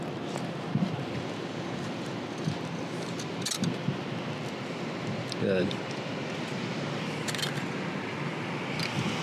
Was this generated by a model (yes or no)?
no